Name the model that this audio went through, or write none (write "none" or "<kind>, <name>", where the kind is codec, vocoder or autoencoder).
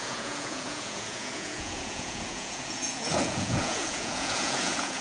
vocoder, Vocos